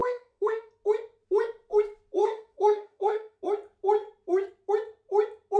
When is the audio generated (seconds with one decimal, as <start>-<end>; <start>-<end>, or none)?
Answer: 0.0-0.7; 2.2-3.4